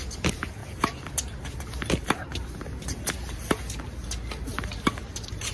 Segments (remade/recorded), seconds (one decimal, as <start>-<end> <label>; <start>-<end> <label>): 0.0-5.5 recorded

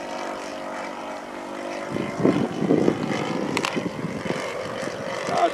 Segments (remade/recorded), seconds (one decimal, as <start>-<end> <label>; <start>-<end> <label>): 0.0-0.5 remade; 0.5-2.4 recorded; 2.4-5.5 remade

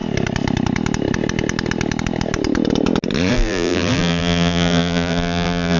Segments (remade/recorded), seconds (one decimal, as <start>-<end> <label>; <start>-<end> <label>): 0.0-3.3 recorded; 3.3-5.8 remade

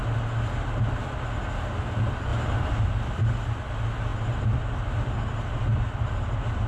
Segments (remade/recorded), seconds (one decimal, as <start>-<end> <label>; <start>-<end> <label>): 0.0-6.7 recorded

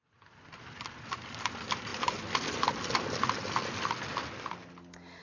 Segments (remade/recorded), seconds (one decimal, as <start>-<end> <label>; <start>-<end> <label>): 0.0-5.2 recorded

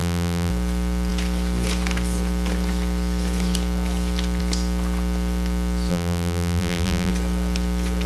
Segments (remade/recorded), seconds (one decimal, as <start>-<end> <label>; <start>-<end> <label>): 0.0-0.5 remade; 0.5-5.9 recorded; 5.9-7.1 remade; 7.1-8.1 recorded

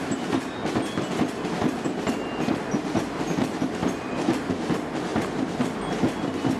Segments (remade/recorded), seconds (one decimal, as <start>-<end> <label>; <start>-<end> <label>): 0.0-3.8 recorded; 3.8-4.5 remade; 4.5-5.1 recorded; 5.1-5.8 remade; 5.8-6.6 recorded